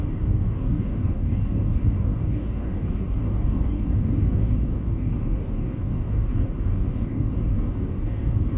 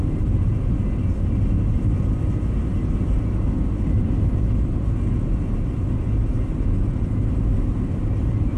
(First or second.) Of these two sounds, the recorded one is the second